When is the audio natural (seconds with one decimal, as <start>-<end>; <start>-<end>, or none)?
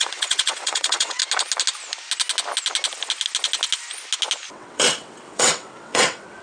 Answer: 1.2-4.5